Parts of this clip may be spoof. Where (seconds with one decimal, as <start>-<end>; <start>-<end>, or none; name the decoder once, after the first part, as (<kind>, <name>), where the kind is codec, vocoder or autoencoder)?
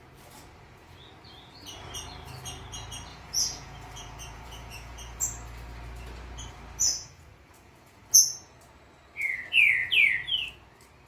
3.1-5.2 (vocoder, Vocos); 6.9-8.1